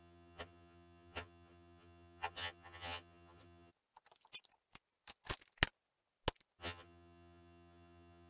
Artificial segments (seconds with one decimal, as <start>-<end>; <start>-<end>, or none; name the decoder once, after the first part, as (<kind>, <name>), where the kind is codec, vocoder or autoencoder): 0.0-3.7 (vocoder, HiFi-GAN); 6.6-8.3